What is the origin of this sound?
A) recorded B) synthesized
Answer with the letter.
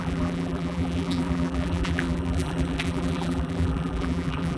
B